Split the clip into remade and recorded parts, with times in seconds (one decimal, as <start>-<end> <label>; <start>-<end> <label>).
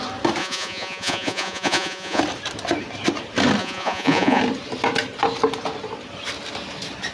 0.0-0.4 recorded; 0.4-2.2 remade; 2.2-3.6 recorded; 3.6-4.4 remade; 4.4-7.1 recorded